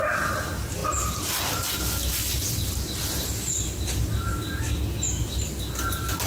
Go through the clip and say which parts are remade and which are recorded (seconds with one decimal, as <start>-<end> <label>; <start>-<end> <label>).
0.0-6.3 recorded